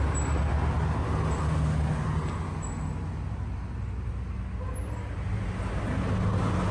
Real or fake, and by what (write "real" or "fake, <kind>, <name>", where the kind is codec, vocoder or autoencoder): real